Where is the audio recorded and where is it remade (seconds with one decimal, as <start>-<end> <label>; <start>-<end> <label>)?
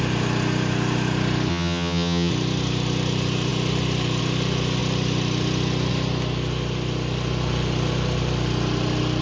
0.0-1.5 recorded; 1.5-2.3 remade; 2.3-9.2 recorded